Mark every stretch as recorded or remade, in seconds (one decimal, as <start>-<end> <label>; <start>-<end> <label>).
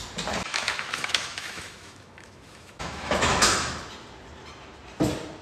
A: 0.0-0.5 recorded; 0.5-3.7 remade; 3.7-5.4 recorded